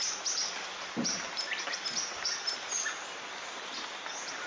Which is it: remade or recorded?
recorded